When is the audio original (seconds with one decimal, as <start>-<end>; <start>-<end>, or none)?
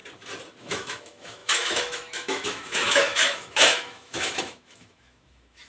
0.0-0.6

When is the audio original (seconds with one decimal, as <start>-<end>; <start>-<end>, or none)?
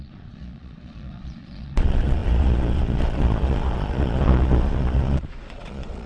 none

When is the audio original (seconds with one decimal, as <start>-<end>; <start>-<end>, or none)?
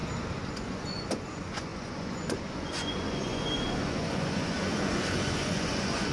0.0-0.5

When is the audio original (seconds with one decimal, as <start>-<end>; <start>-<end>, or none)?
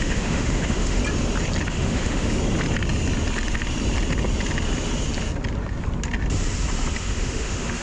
1.0-1.7; 2.4-7.0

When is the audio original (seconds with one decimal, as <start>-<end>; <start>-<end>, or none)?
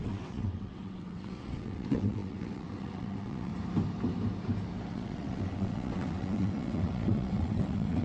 3.5-4.9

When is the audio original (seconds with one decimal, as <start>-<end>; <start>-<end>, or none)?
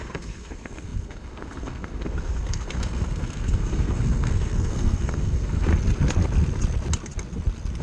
5.7-7.8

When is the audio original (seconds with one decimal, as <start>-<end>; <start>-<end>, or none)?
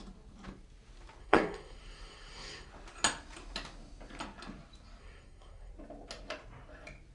0.0-1.2; 2.7-5.0; 5.7-7.1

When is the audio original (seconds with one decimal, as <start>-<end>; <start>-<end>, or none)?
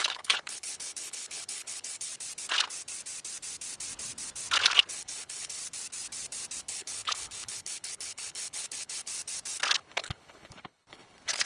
2.1-4.9; 5.6-6.6; 9.1-9.8